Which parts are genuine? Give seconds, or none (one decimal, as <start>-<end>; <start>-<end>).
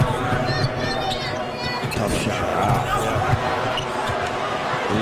0.0-5.0